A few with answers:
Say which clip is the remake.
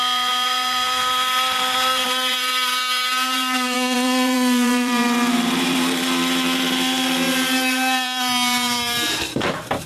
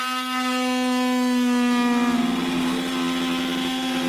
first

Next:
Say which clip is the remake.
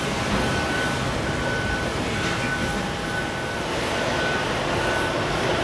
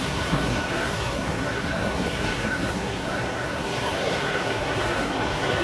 second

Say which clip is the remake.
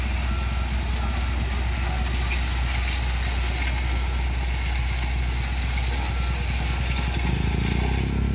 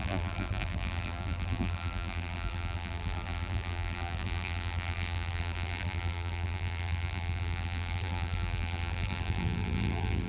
second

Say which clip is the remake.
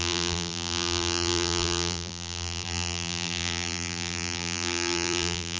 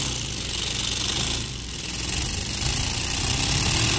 first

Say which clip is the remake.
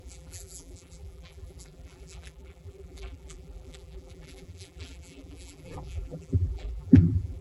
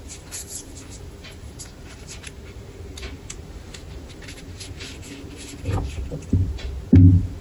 first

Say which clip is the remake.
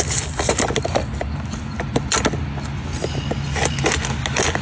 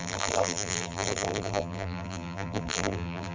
second